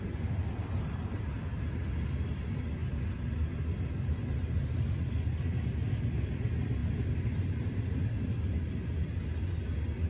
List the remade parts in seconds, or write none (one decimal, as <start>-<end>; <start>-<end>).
none